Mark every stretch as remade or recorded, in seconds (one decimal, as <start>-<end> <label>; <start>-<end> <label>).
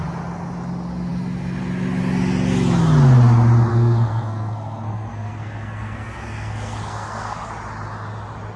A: 0.0-3.7 recorded; 3.7-7.5 remade; 7.5-8.6 recorded